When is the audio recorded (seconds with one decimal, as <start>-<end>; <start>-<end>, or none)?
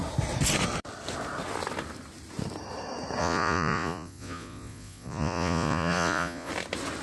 0.0-3.2; 6.5-7.0